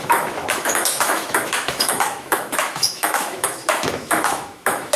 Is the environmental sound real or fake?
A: fake